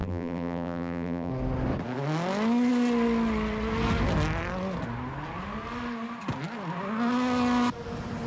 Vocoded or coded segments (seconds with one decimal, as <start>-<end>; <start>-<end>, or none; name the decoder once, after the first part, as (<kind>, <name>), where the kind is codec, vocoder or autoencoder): 0.0-1.3 (vocoder, BigVGAN v2)

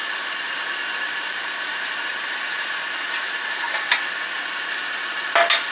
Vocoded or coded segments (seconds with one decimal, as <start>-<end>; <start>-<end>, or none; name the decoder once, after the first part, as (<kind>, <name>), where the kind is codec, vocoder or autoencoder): 0.0-0.6 (vocoder, BigVGAN v2); 1.3-3.9

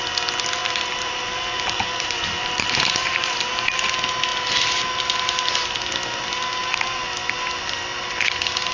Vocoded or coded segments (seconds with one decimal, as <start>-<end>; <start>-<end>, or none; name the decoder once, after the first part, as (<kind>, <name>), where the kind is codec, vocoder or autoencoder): 0.6-3.5 (vocoder, BigVGAN v2)

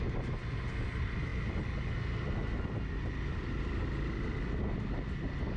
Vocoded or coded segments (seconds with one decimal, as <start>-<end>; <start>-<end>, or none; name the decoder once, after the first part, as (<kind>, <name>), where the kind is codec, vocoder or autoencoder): none

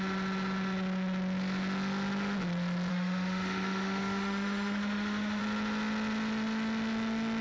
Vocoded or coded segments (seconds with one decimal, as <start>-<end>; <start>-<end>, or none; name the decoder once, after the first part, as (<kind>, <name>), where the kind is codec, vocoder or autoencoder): 2.9-5.4 (autoencoder, DAC-VAE)

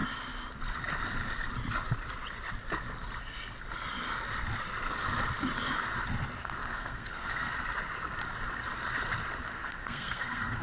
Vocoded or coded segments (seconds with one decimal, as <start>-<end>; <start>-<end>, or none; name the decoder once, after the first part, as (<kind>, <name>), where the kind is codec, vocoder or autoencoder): 6.4-7.5 (codec, SNAC); 9.5-10.6